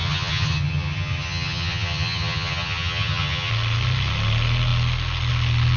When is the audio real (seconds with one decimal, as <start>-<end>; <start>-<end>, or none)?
3.5-5.8